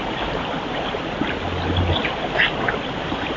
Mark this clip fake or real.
real